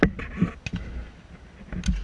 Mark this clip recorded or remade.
recorded